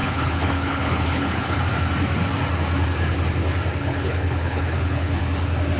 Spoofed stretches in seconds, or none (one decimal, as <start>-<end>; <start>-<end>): 0.0-1.6; 3.8-5.2